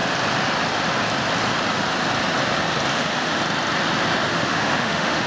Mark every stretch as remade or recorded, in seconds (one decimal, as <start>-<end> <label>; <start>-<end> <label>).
0.0-2.9 recorded; 2.9-3.4 remade; 3.4-4.3 recorded; 4.3-5.3 remade